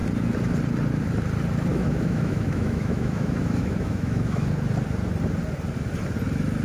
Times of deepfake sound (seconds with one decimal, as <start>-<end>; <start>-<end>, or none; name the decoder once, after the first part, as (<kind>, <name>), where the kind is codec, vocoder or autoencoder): 1.7-4.5 (autoencoder, DAC-VAE)